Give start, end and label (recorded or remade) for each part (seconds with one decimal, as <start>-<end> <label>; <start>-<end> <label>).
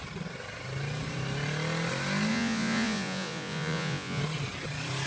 0.0-2.3 recorded; 2.3-4.2 remade; 4.2-5.1 recorded